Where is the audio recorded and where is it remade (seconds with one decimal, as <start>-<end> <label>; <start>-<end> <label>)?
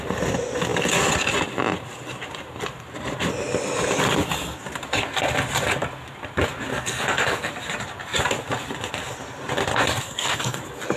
0.0-6.7 recorded; 6.7-7.5 remade; 7.5-10.0 recorded; 10.0-10.6 remade; 10.6-11.0 recorded